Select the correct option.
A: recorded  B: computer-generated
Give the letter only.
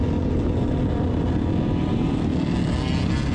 A